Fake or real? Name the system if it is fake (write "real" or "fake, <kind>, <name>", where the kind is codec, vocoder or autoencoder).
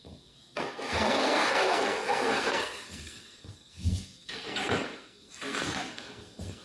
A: fake, codec, SNAC